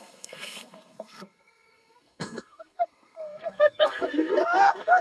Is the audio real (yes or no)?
no